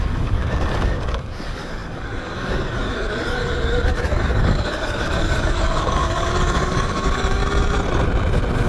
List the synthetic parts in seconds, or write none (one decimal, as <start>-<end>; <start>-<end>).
0.0-7.4